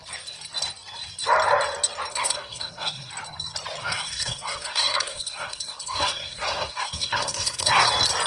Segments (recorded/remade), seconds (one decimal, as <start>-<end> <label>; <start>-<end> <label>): 0.0-2.1 recorded; 2.1-3.1 remade; 3.1-3.8 recorded; 3.8-7.9 remade; 7.9-8.3 recorded